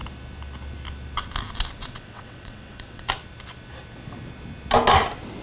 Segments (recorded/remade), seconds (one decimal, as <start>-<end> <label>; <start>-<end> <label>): 0.0-1.8 recorded; 1.8-3.1 remade; 3.1-5.4 recorded